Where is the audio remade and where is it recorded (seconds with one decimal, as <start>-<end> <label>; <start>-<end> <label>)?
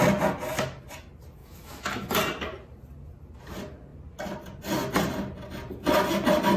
0.0-1.4 recorded; 1.4-2.2 remade; 2.2-6.6 recorded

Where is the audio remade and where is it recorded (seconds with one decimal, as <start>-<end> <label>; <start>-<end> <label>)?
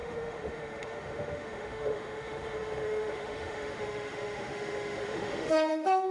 0.0-6.1 remade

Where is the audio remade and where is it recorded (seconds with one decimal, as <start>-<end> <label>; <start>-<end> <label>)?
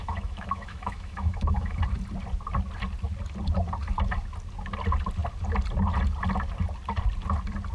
0.0-1.8 remade; 1.8-7.7 recorded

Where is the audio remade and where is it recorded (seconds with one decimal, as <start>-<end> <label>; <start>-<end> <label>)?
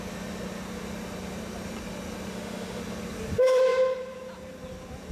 0.0-2.3 recorded; 2.3-2.8 remade; 2.8-5.1 recorded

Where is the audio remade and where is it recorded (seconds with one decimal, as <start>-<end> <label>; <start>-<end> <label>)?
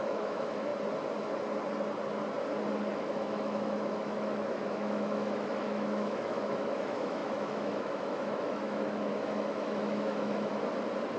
0.0-0.7 remade; 0.7-2.9 recorded; 2.9-10.5 remade; 10.5-11.2 recorded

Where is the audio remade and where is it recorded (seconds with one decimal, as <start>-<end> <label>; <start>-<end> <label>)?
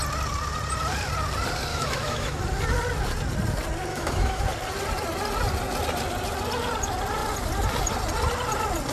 0.0-1.7 recorded; 1.7-2.4 remade; 2.4-3.9 recorded; 3.9-4.4 remade; 4.4-8.9 recorded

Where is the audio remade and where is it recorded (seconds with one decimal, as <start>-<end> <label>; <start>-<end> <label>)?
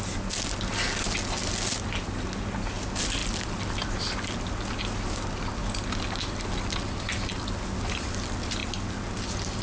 0.0-9.6 recorded